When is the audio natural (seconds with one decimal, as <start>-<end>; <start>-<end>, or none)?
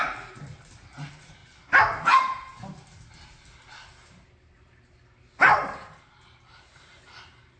0.0-0.7; 1.4-6.0